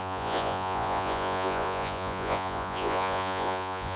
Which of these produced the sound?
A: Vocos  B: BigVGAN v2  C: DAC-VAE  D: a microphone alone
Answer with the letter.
A